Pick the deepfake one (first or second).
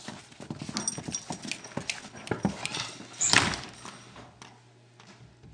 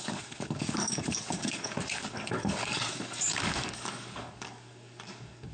second